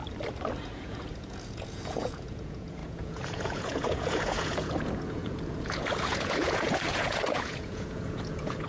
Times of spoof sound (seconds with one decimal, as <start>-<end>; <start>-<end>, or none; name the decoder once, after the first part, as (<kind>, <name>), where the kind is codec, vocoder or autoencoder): 0.6-8.7 (vocoder, Vocos)